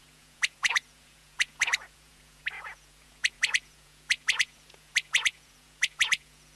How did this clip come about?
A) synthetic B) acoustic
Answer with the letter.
A